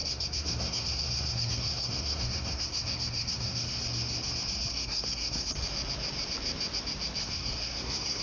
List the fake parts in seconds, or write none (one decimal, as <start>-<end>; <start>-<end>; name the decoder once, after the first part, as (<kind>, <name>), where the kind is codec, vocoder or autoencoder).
0.0-3.8 (codec, SNAC); 4.7-5.5; 7.2-8.2